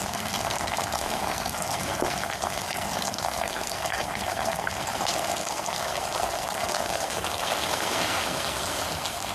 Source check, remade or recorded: remade